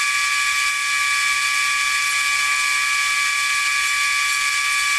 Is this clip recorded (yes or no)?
yes